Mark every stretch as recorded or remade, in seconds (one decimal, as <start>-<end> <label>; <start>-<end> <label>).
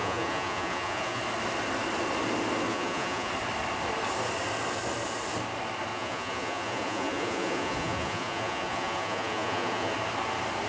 0.0-1.2 remade; 1.2-2.7 recorded; 2.7-3.3 remade; 3.3-5.9 recorded; 5.9-9.9 remade; 9.9-10.7 recorded